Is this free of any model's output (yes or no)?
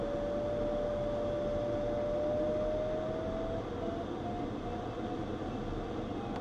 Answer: yes